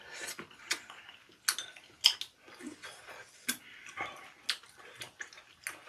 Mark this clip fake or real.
real